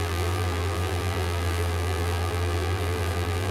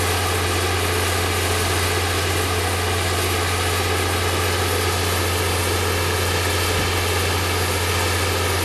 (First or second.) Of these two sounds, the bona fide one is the second